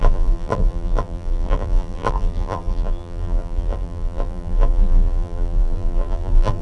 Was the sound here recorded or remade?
remade